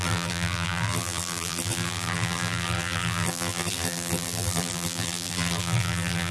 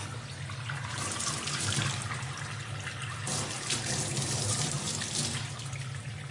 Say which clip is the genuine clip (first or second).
second